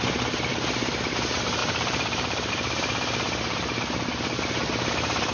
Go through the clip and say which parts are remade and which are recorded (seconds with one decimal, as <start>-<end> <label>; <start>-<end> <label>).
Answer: 0.0-1.6 recorded; 1.6-2.5 remade; 2.5-5.3 recorded